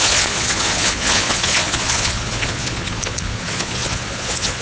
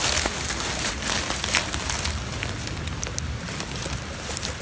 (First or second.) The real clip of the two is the second